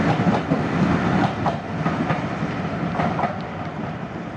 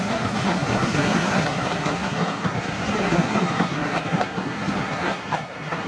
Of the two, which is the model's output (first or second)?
second